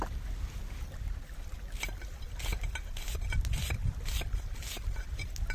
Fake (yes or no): no